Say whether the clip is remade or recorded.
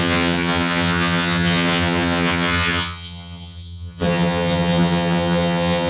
remade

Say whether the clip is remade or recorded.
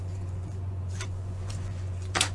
remade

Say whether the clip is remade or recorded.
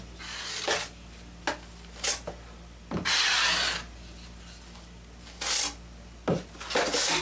recorded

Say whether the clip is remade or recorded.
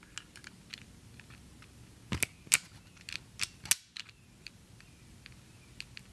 recorded